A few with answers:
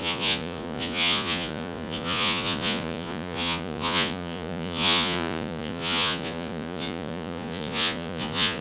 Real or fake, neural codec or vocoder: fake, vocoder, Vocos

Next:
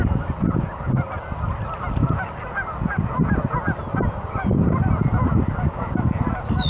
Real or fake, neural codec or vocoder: real